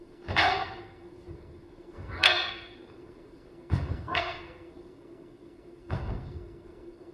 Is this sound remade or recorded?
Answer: remade